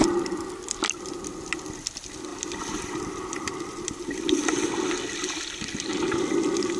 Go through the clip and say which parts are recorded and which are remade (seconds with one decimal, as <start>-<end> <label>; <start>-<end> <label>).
0.0-2.3 recorded; 2.3-4.7 remade; 4.7-6.8 recorded